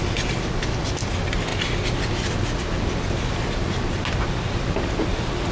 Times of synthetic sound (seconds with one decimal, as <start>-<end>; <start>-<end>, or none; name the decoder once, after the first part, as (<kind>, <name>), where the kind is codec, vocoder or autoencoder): none